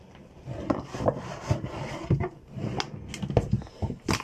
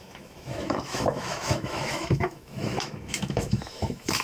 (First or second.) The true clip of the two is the first